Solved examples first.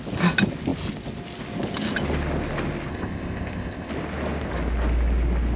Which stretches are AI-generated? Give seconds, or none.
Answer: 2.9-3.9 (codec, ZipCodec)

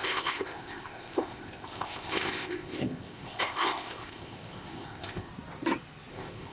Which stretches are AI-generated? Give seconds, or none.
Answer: 0.0-5.3 (codec, ZipCodec); 6.1-6.5

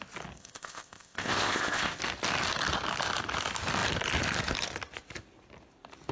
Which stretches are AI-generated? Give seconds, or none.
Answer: 0.4-2.0 (codec, ZipCodec)